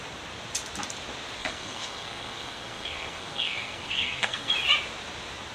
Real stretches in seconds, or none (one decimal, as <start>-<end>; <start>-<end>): 0.0-1.4; 4.5-5.5